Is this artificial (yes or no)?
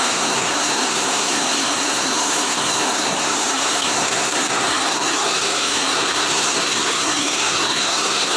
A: yes